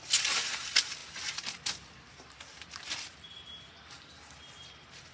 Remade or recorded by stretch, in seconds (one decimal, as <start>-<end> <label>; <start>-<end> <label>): 0.0-5.1 recorded